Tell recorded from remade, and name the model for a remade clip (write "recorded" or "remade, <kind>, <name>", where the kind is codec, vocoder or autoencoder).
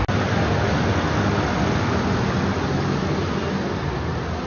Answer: recorded